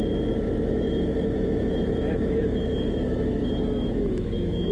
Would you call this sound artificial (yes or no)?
yes